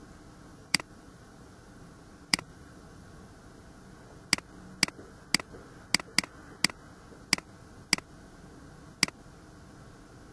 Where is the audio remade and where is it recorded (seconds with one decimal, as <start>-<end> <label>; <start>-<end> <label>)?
0.0-0.5 recorded; 0.5-1.9 remade; 1.9-2.3 recorded; 2.3-3.3 remade; 3.3-10.3 recorded